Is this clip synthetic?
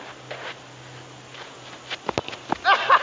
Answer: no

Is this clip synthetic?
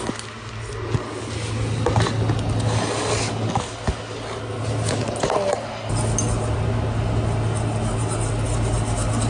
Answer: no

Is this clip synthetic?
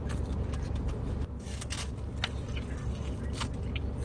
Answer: no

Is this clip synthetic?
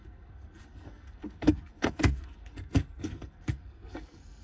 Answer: yes